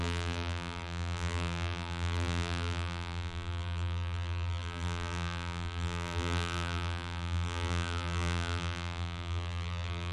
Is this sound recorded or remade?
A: remade